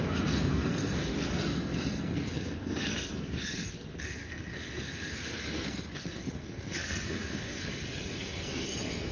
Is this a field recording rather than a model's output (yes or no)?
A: no